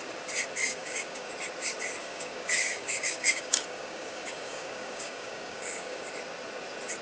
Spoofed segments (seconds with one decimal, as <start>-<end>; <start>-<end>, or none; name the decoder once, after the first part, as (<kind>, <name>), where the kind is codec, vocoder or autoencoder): 0.6-1.3 (codec, DAC); 2.0-6.0